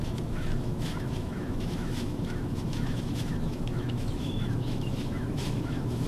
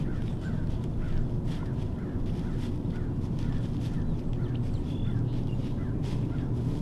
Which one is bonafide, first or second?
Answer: second